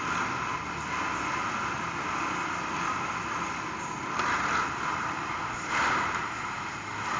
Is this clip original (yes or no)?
yes